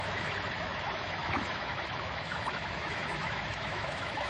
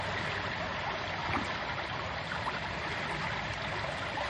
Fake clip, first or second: first